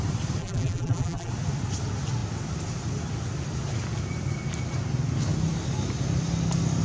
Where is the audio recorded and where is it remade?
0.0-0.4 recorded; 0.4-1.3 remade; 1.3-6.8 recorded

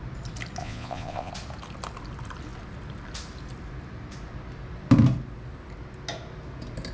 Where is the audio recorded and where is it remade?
0.0-0.6 recorded; 0.6-1.3 remade; 1.3-6.9 recorded

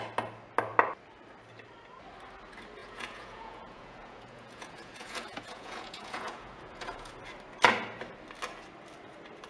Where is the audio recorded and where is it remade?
0.0-2.8 recorded; 2.8-7.1 remade; 7.1-9.5 recorded

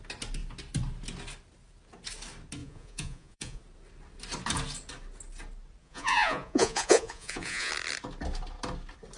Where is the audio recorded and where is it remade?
0.0-2.6 recorded; 2.6-3.6 remade; 3.6-5.8 recorded; 5.8-7.7 remade; 7.7-9.2 recorded

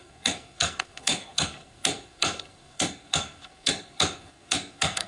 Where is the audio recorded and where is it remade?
0.0-5.1 remade

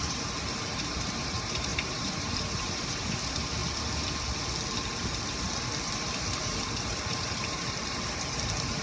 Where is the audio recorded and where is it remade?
0.0-3.6 remade; 3.6-6.2 recorded; 6.2-8.8 remade

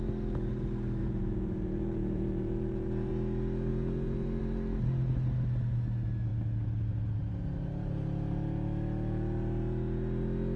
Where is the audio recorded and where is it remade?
0.0-1.0 recorded; 1.0-3.1 remade; 3.1-3.7 recorded; 3.7-4.4 remade; 4.4-10.6 recorded